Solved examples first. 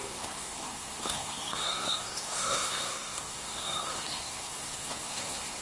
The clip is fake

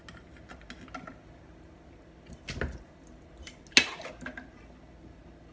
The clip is real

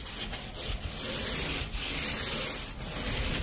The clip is real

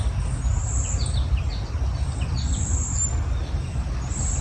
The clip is real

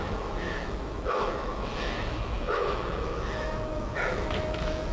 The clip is fake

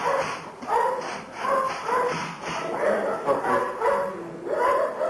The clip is real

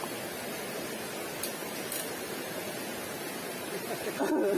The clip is real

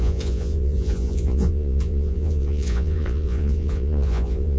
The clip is fake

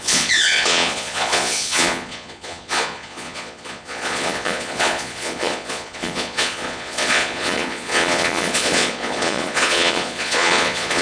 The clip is fake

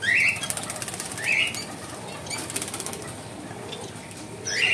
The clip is real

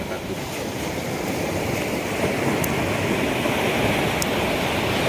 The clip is real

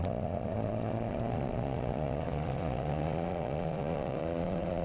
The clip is fake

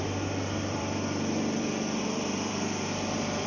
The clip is fake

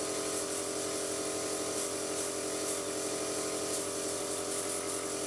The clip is real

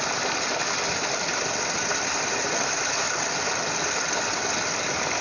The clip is real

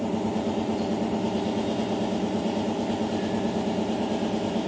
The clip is fake